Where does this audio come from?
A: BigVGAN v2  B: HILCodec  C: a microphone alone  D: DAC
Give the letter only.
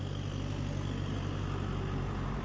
C